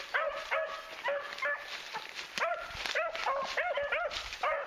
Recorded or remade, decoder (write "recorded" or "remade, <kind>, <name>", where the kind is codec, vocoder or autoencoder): recorded